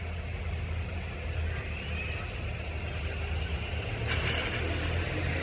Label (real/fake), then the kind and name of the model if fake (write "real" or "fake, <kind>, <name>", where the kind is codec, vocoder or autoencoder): real